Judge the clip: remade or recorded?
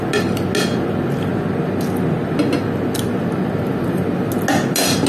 recorded